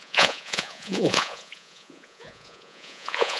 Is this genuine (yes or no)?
no